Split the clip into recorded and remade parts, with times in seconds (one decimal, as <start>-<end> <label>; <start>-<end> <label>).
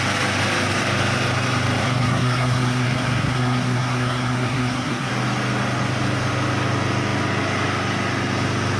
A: 0.0-1.8 recorded; 1.8-5.1 remade; 5.1-8.8 recorded